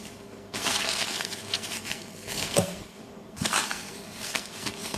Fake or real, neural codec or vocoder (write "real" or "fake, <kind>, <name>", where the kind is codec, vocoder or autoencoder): fake, codec, SNAC